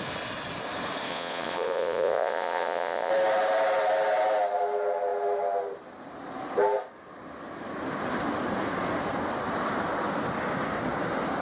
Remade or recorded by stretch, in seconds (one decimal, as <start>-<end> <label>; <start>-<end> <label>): 0.0-1.1 recorded; 1.1-3.1 remade; 3.1-11.4 recorded